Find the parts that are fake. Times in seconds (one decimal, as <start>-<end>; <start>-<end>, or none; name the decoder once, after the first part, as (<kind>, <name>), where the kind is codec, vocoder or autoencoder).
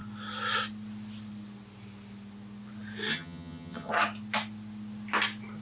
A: 3.1-3.9 (vocoder, HiFi-GAN)